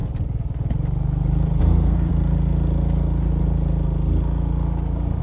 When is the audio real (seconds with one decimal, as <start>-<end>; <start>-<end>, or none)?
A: 0.0-1.6; 2.1-5.2